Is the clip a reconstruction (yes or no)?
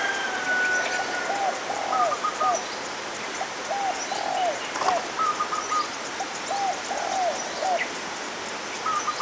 no